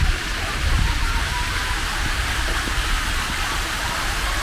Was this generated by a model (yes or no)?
yes